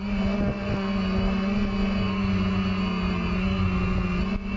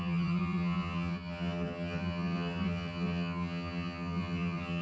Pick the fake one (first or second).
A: second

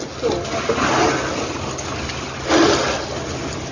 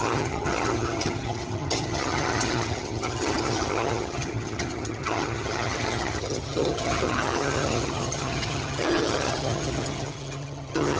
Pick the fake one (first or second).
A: second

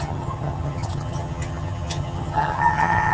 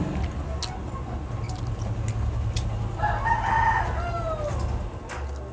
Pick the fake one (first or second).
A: first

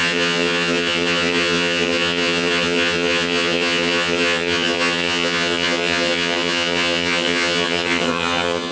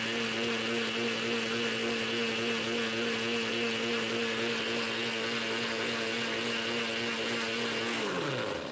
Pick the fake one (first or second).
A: first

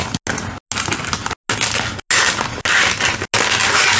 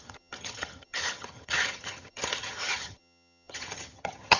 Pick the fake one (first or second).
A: second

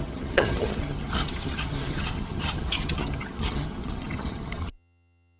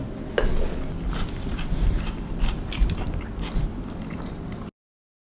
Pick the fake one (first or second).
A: first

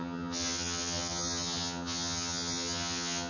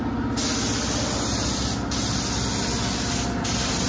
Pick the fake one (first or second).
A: first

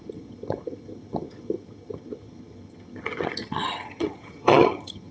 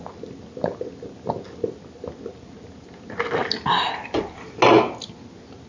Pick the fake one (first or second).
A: first